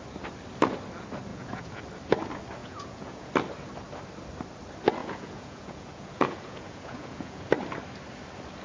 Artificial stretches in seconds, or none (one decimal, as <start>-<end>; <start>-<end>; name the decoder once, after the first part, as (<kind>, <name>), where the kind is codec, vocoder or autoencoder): 1.3-1.8 (vocoder, Vocos); 2.6-3.3; 5.0-7.5